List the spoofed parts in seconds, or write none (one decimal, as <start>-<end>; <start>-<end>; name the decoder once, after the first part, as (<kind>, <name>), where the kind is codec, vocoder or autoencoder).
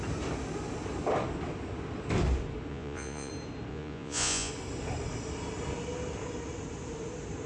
2.7-3.3 (vocoder, Vocos); 3.7-4.5